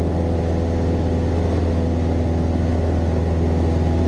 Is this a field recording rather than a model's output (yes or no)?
yes